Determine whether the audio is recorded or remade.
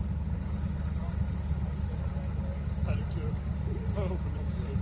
recorded